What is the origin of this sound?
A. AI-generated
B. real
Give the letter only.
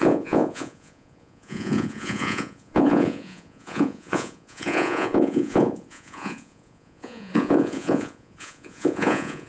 A